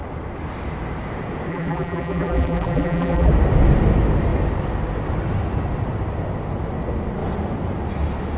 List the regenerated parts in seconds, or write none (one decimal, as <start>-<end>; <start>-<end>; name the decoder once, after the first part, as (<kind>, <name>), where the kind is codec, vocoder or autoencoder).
1.5-3.3 (vocoder, BigVGAN v2)